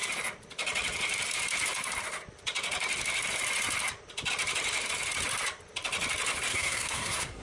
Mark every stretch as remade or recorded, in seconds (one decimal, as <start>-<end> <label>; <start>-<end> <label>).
0.0-6.5 recorded; 6.5-7.4 remade